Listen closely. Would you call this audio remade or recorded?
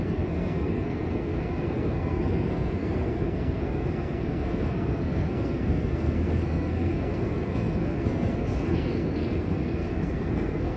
remade